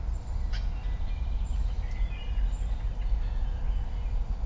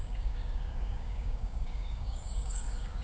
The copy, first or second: second